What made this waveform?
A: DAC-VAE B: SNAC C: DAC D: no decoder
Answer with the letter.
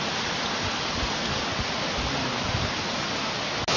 D